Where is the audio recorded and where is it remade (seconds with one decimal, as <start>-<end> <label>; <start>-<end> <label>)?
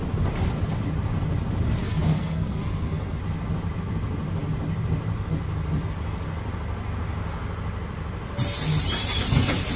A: 0.0-1.8 recorded; 1.8-3.2 remade; 3.2-9.8 recorded